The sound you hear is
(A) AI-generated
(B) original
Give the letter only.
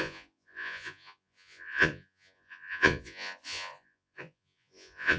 A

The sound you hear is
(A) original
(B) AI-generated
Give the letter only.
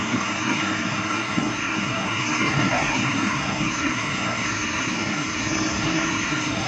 B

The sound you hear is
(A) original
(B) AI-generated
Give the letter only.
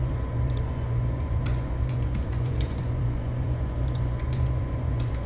B